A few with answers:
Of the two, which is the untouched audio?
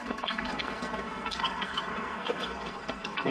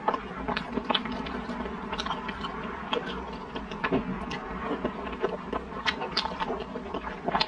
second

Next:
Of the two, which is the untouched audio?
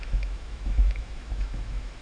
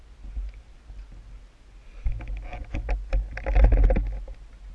second